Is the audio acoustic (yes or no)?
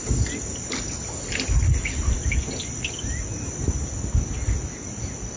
yes